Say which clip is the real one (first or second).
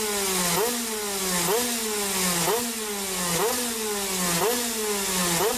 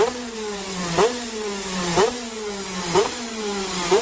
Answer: first